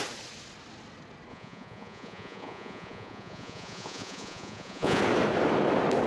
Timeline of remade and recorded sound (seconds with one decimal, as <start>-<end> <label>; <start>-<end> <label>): 0.0-1.3 recorded; 1.3-5.0 remade; 5.0-6.1 recorded